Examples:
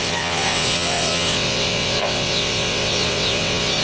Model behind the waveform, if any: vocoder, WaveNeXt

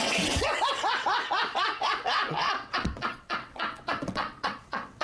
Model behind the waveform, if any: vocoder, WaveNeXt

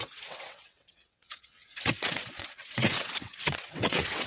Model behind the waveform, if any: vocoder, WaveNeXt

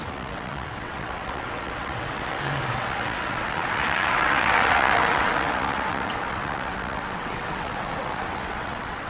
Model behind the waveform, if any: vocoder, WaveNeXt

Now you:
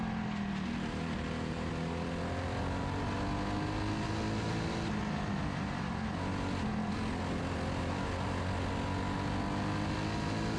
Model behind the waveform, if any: none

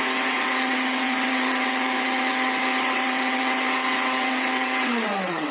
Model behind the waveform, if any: vocoder, WaveNeXt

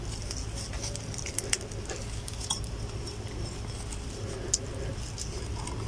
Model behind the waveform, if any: none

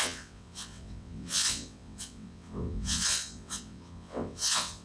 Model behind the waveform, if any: vocoder, WaveNeXt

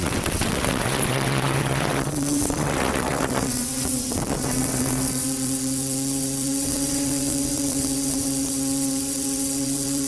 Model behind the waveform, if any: vocoder, WaveNeXt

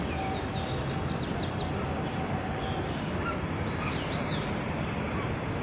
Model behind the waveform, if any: none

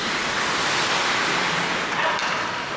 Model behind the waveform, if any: none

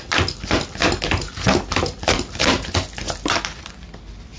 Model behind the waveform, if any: none